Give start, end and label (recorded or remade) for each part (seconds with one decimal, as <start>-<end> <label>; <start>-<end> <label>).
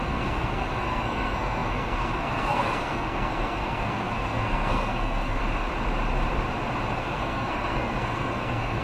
0.0-5.4 remade; 5.4-6.9 recorded; 6.9-8.8 remade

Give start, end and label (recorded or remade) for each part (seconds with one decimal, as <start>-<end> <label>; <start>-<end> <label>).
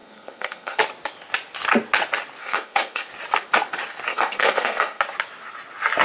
0.0-0.8 remade; 0.8-2.4 recorded; 2.4-3.1 remade; 3.1-4.1 recorded; 4.1-5.0 remade; 5.0-6.0 recorded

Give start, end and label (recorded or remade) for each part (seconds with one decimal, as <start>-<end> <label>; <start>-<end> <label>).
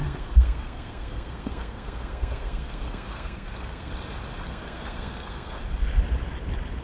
0.0-3.9 remade; 3.9-4.5 recorded; 4.5-5.6 remade; 5.6-6.8 recorded